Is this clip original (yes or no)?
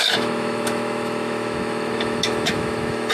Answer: no